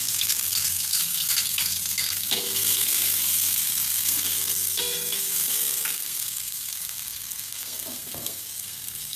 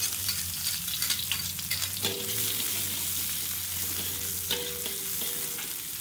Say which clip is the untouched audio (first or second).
second